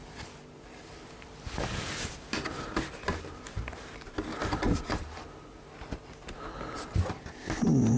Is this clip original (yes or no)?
yes